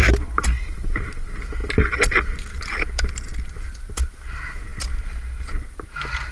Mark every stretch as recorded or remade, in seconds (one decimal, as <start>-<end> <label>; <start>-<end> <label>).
0.0-6.3 recorded